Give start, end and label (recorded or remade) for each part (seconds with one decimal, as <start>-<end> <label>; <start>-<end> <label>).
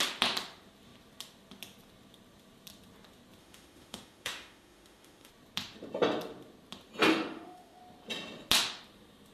0.0-3.4 recorded; 3.4-5.3 remade; 5.3-7.1 recorded; 7.1-7.8 remade; 7.8-9.3 recorded